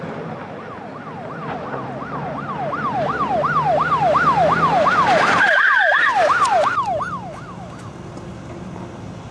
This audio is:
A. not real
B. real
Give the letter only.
B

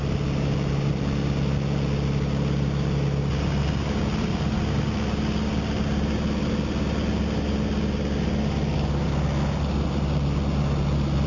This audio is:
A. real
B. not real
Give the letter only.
A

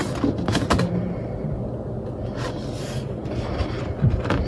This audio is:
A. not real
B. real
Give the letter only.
B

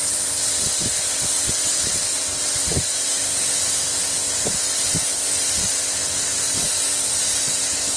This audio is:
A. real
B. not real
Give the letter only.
A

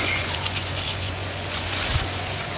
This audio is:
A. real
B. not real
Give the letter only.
B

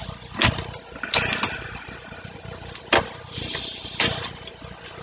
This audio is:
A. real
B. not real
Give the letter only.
A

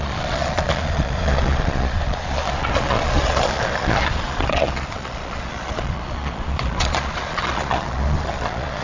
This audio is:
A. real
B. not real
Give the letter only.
B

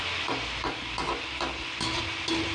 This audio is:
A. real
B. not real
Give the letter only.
A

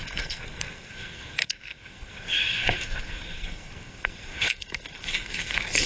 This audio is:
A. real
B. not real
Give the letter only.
B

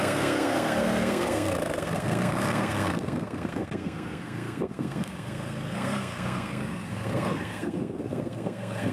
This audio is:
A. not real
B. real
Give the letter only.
A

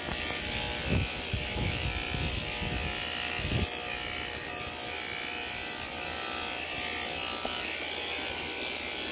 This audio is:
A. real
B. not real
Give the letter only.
A